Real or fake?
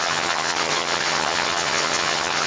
fake